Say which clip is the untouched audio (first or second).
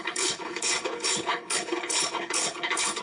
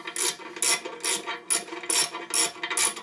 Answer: second